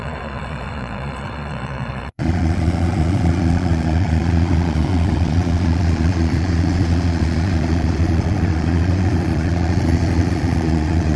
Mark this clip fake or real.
fake